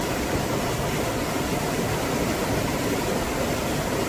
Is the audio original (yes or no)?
yes